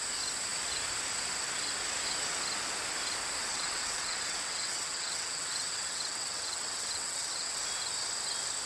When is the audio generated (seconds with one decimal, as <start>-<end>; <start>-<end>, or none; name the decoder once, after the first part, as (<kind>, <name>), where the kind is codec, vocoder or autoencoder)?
3.5-7.6 (vocoder, WaveNeXt)